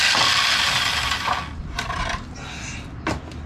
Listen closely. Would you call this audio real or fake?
real